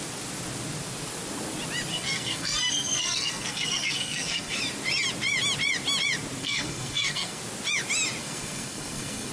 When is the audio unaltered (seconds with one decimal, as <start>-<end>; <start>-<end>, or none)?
0.0-1.9; 4.6-6.4; 7.4-8.2